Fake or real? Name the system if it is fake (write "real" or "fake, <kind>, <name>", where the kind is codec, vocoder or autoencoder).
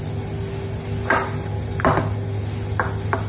real